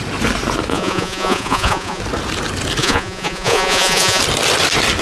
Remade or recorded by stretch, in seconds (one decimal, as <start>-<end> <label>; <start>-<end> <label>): 0.0-0.7 recorded; 0.7-2.0 remade; 2.0-2.8 recorded; 2.8-4.2 remade; 4.2-5.0 recorded